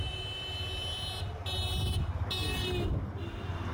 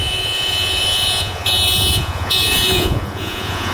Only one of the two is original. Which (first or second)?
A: first